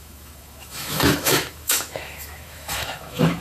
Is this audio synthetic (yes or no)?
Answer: yes